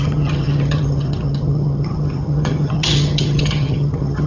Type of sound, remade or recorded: remade